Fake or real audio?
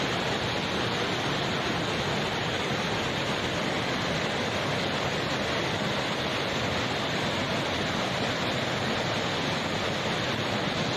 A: real